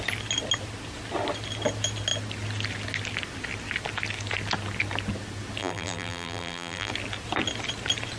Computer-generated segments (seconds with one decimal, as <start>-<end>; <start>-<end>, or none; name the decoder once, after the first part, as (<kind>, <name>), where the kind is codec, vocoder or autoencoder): 5.6-6.9 (vocoder, BigVGAN v2)